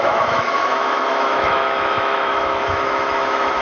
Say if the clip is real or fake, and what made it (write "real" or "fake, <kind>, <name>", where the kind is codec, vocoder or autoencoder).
fake, autoencoder, DAC-VAE